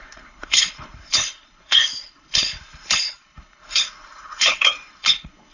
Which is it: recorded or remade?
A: remade